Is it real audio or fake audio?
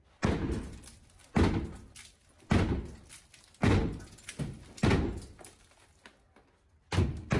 real